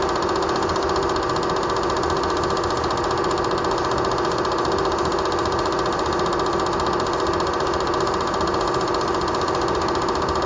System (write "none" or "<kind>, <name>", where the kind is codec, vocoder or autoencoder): none